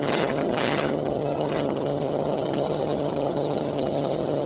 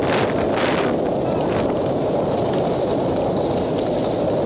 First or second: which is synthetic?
first